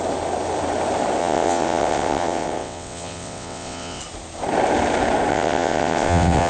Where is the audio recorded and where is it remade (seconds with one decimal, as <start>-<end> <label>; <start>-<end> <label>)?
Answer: 0.0-1.2 recorded; 1.2-4.0 remade; 4.0-5.3 recorded; 5.3-6.5 remade